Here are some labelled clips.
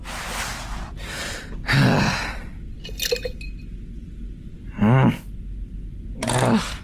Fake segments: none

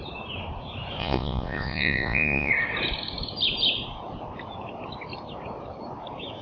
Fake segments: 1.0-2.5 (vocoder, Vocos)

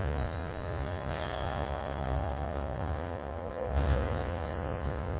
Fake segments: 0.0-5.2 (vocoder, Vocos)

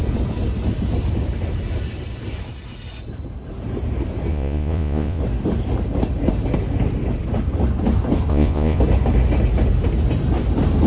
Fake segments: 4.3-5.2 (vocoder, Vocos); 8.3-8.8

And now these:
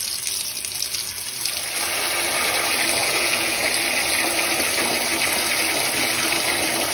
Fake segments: 3.0-3.7 (vocoder, Vocos)

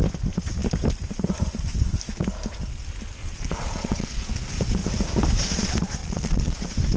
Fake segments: 3.2-4.3 (vocoder, Vocos); 6.0-6.6